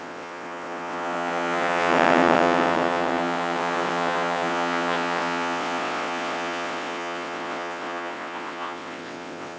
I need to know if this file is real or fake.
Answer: fake